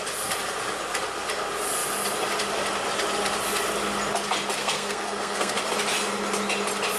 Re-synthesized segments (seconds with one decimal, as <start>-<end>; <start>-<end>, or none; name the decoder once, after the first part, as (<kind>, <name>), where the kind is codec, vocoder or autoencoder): 4.6-5.6 (codec, SNAC)

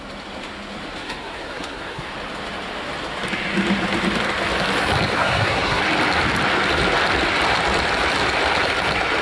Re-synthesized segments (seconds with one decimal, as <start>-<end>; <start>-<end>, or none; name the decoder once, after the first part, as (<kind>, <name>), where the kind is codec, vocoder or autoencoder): 1.0-2.1 (codec, SNAC); 5.2-5.8

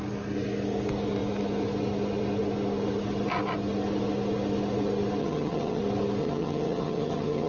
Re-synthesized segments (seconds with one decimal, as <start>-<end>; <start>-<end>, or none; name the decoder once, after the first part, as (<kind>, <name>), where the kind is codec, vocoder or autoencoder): 5.2-5.8 (vocoder, HiFi-GAN); 6.2-7.5

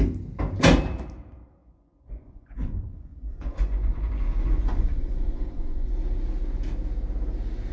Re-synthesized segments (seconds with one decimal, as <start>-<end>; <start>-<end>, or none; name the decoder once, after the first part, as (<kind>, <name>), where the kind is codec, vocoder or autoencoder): 1.6-5.9 (vocoder, Vocos)